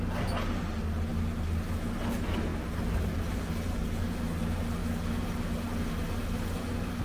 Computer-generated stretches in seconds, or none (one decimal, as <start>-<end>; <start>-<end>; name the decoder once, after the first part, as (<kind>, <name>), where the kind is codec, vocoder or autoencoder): none